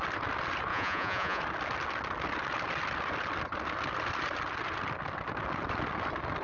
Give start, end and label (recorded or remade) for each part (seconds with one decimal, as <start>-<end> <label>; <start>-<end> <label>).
0.0-0.7 recorded; 0.7-1.4 remade; 1.4-6.4 recorded